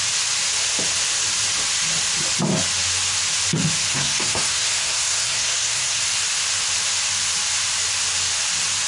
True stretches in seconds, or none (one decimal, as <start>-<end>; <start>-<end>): 0.0-3.9; 6.0-8.9